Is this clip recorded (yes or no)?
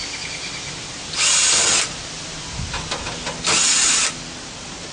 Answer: yes